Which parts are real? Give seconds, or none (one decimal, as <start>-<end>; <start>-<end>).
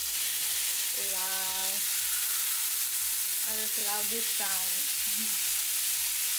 1.2-1.6; 3.1-3.8; 4.7-6.4